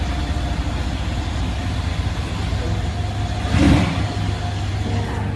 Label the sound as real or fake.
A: real